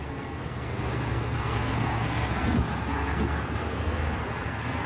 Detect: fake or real fake